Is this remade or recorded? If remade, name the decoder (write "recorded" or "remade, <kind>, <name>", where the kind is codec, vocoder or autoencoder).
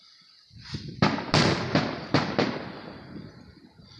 recorded